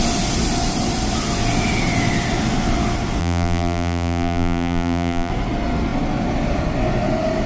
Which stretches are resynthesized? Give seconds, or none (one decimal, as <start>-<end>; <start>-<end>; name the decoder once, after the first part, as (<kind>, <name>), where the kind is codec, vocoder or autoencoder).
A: 3.2-5.3 (vocoder, BigVGAN v2)